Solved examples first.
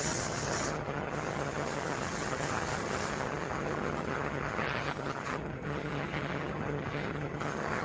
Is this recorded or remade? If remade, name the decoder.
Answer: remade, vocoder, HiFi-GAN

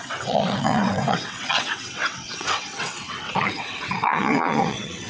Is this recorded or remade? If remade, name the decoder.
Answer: remade, vocoder, WaveNeXt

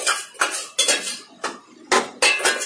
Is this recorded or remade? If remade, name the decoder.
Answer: recorded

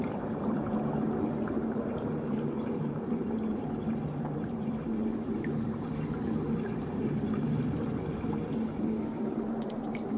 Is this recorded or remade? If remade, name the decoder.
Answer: remade, vocoder, BigVGAN v2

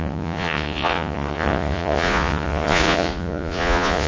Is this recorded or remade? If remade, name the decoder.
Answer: remade, vocoder, Vocos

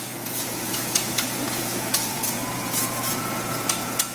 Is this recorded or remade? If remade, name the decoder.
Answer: remade, vocoder, Vocos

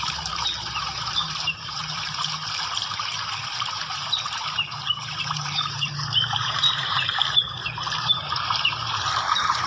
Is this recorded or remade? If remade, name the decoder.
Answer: remade, vocoder, BigVGAN v2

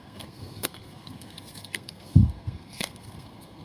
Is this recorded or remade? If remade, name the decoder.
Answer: remade, codec, SNAC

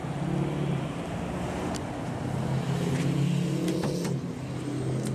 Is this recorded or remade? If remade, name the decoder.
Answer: recorded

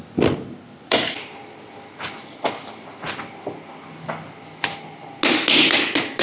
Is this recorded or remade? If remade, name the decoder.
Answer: recorded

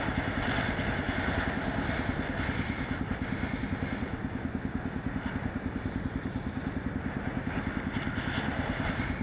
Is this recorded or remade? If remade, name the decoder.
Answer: recorded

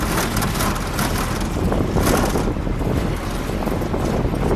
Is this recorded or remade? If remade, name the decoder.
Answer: recorded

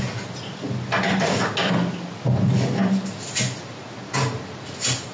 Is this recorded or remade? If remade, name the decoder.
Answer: recorded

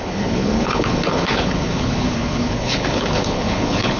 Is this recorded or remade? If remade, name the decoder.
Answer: remade, codec, HILCodec